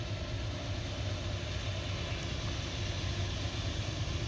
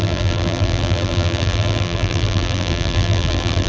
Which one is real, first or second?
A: first